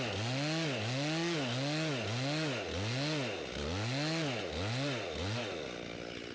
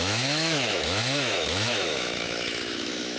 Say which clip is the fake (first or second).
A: second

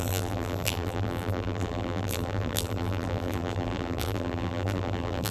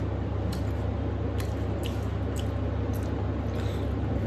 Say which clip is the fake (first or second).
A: first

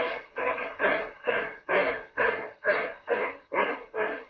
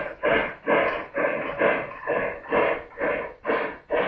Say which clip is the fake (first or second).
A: first